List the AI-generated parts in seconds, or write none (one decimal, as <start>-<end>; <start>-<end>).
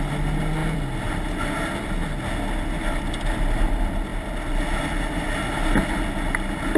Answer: none